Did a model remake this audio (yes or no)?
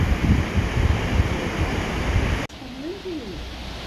no